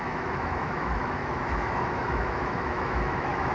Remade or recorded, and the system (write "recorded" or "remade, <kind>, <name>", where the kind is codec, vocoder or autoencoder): remade, autoencoder, DAC-VAE